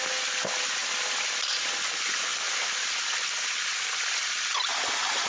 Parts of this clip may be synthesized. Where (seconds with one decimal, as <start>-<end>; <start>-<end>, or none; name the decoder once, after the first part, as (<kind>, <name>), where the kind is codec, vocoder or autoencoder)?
none